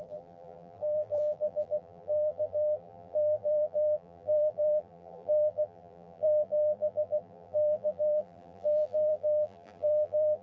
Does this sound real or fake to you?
fake